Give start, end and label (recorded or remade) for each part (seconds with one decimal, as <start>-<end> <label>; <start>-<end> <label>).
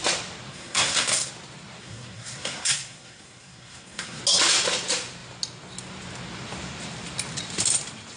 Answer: 0.0-0.5 recorded; 0.5-1.3 remade; 1.3-1.8 recorded; 1.8-4.2 remade; 4.2-8.2 recorded